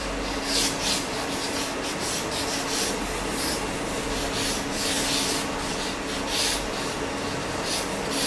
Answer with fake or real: real